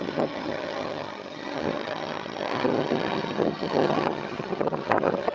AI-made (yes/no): yes